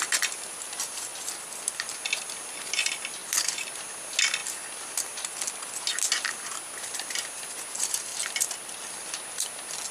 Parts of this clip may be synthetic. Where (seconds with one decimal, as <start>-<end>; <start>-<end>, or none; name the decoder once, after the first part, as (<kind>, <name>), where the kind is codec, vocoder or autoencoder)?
1.1-1.9 (vocoder, BigVGAN v2); 3.2-3.7; 8.1-8.9

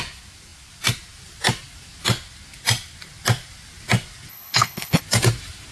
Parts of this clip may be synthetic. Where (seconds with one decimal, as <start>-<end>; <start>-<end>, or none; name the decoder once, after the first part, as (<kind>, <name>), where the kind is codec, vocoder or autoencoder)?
4.3-5.0 (codec, HILCodec)

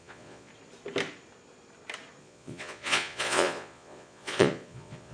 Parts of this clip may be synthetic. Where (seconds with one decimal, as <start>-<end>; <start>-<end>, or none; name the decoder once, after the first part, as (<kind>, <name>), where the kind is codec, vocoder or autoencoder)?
0.0-0.5 (vocoder, Vocos); 2.2-5.1

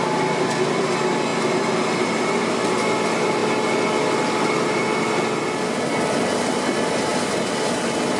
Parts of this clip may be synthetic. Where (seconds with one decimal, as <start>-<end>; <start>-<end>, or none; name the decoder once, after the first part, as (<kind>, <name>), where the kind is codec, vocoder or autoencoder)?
none

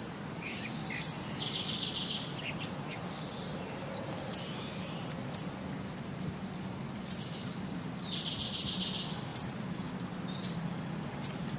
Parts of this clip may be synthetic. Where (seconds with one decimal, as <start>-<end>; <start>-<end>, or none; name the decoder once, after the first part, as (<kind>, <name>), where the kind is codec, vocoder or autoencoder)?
none

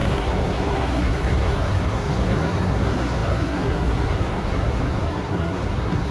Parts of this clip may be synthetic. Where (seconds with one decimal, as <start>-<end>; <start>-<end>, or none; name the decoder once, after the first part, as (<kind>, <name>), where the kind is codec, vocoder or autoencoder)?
0.0-6.1 (codec, SNAC)

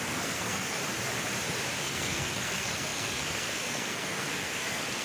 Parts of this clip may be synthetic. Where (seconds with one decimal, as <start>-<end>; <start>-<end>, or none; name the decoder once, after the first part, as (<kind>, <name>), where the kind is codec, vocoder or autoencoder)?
0.0-0.8 (codec, SNAC); 1.8-5.0

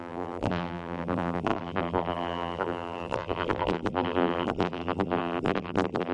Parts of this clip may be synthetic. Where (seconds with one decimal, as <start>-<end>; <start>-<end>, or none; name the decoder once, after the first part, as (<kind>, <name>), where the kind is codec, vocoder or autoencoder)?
0.0-6.1 (vocoder, BigVGAN v2)